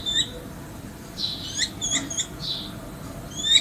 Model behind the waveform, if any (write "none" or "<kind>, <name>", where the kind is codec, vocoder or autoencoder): none